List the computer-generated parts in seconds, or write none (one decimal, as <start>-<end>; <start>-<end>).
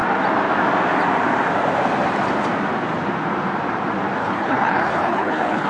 4.2-5.7